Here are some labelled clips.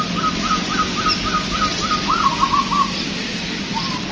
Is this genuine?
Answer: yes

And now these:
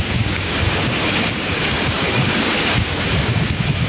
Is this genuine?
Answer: no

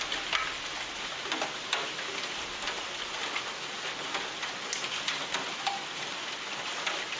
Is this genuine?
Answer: yes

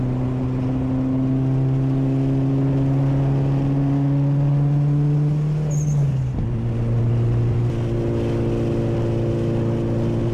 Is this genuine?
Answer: yes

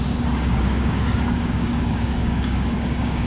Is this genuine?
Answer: no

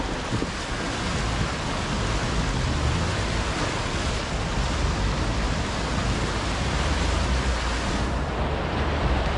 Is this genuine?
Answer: yes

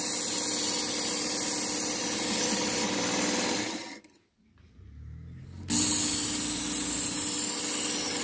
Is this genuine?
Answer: yes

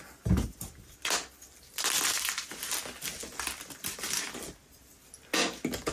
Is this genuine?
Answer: yes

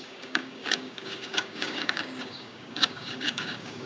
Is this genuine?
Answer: no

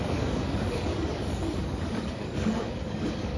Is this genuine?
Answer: no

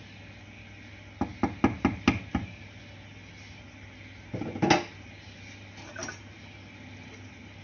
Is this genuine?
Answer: yes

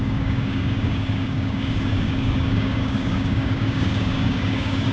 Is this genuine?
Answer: no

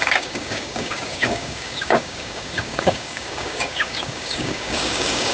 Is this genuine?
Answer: no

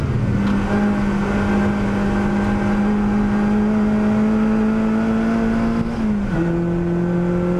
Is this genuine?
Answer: yes